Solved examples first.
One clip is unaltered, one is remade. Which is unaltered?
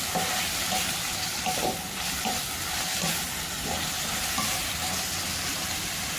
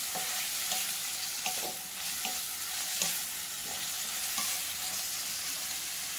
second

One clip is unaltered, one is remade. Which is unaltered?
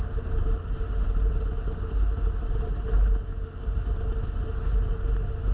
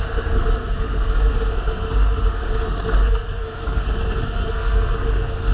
first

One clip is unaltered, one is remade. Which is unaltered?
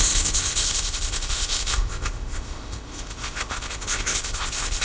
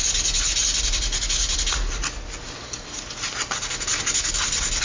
second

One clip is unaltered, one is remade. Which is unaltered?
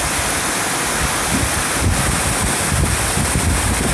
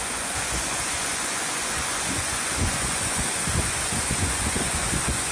first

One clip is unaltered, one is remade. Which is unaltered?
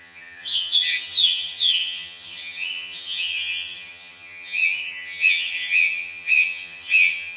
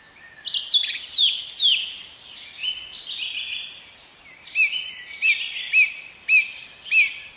second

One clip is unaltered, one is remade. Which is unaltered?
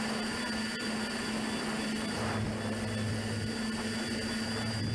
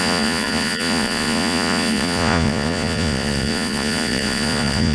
first